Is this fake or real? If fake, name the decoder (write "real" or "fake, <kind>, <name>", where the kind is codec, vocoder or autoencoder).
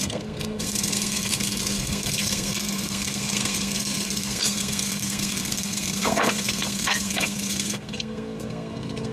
fake, codec, SNAC